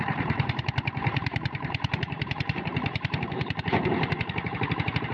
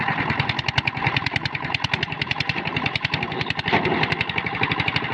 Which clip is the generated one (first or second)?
first